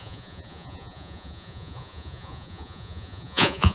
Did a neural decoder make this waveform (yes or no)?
yes